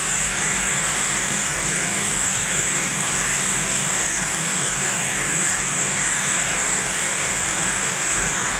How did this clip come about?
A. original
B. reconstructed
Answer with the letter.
B